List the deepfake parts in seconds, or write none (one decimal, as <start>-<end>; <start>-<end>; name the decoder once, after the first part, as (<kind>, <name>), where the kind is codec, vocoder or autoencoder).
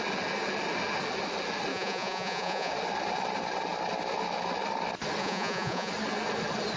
1.7-2.7 (vocoder, Vocos); 5.2-5.9